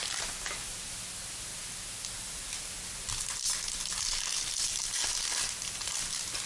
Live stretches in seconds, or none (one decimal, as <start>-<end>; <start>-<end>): 0.0-6.5